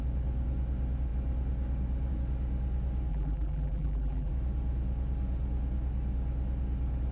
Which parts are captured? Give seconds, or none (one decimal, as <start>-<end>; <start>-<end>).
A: 0.0-3.1; 4.3-7.1